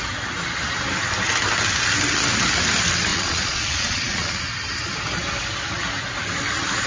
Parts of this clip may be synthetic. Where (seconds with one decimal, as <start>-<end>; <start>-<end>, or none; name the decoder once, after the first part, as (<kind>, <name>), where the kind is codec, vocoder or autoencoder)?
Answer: 3.1-4.4 (vocoder, Vocos)